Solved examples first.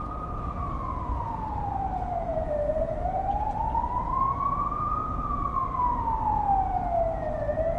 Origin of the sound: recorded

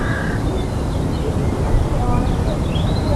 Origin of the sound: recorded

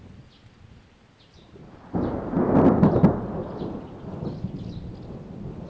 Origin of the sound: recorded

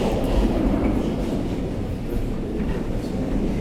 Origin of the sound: remade